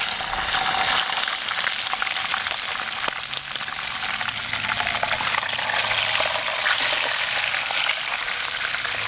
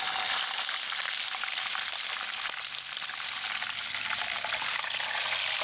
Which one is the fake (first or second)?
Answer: second